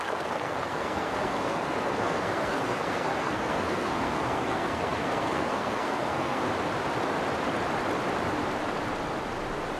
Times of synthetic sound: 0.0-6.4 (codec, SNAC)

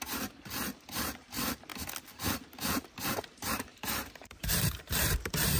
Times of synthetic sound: 3.7-5.6 (vocoder, BigVGAN v2)

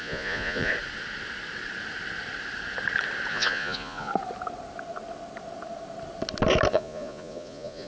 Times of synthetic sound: 0.0-0.7 (vocoder, Vocos); 3.3-4.1; 6.7-7.9

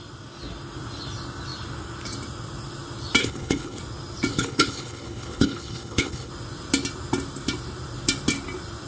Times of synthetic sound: 3.2-3.8 (codec, HILCodec); 4.3-6.3

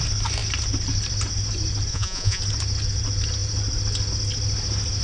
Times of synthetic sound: 1.9-2.4 (vocoder, Vocos)

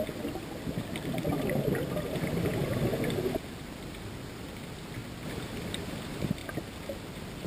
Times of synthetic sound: none

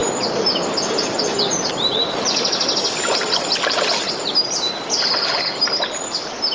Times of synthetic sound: none